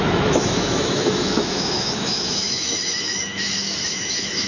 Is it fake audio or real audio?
fake